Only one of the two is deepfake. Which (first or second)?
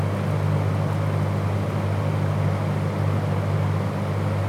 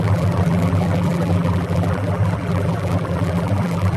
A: second